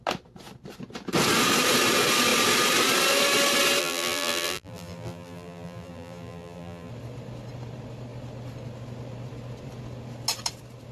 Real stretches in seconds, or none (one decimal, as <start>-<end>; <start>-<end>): 0.0-3.8; 6.9-10.9